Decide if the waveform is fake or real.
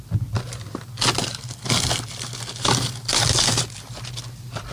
real